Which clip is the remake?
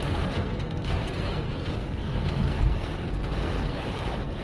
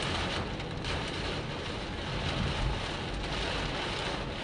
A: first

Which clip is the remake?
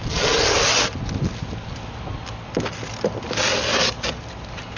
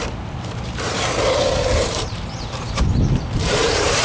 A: second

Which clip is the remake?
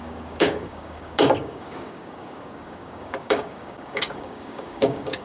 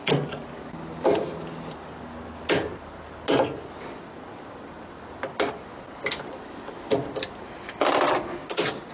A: first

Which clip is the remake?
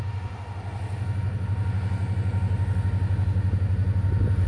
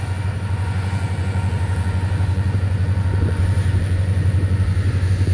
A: second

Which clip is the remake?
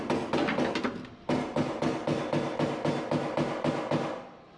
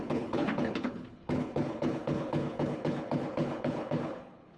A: second